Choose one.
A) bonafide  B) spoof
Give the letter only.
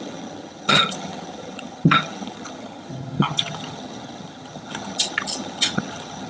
B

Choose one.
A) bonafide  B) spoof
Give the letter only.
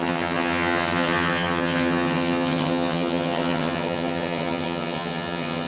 B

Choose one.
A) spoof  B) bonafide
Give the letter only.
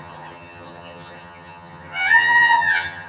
A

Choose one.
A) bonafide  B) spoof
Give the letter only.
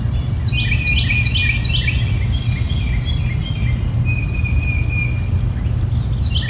A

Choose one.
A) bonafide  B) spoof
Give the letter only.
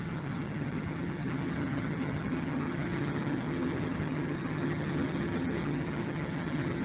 B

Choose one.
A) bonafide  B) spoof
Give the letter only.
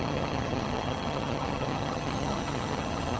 B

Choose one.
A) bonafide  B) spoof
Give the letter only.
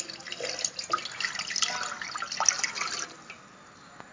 A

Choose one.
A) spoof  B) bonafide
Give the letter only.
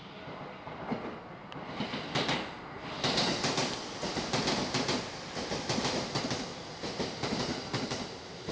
B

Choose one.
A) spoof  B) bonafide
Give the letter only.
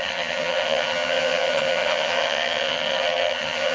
A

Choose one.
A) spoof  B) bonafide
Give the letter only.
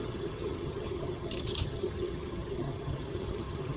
A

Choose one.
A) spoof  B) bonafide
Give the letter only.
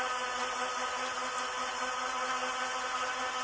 B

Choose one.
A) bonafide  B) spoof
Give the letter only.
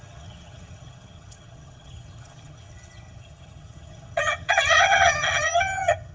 B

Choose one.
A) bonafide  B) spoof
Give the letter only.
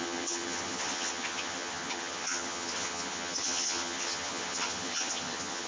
B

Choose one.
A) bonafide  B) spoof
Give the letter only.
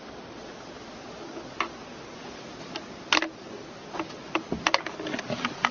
A